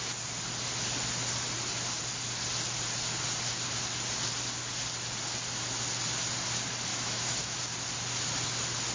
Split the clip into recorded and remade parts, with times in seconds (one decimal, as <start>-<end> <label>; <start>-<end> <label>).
0.0-6.9 recorded; 6.9-7.6 remade; 7.6-8.9 recorded